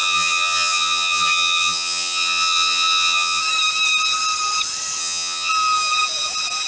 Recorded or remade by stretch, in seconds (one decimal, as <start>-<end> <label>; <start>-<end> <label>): 0.0-3.4 remade; 3.4-5.0 recorded; 5.0-5.5 remade; 5.5-6.7 recorded